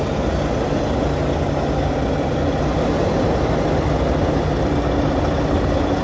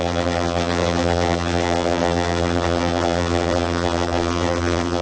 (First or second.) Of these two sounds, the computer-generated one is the second